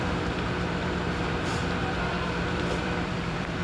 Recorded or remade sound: remade